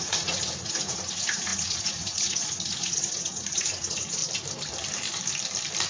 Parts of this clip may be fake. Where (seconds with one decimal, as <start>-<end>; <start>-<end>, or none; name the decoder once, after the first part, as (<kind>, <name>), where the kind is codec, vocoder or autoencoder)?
0.0-4.2 (vocoder, Vocos)